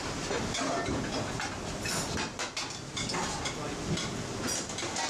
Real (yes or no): yes